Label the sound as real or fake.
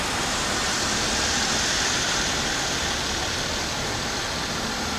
real